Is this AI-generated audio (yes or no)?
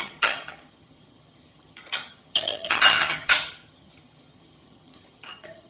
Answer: yes